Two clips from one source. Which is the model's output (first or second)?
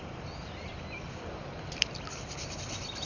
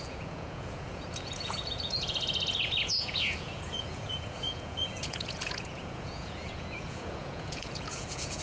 second